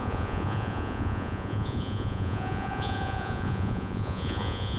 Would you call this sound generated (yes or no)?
yes